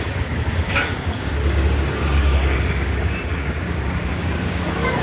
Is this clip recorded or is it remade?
remade